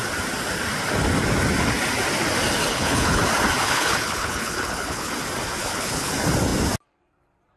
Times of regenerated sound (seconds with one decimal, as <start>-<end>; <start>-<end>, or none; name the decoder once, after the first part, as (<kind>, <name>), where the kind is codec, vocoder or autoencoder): 2.7-3.2 (codec, HILCodec); 3.6-5.1; 5.6-6.1